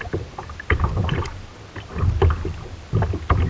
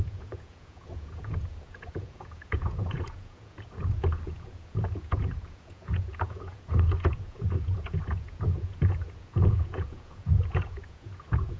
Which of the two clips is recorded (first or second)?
first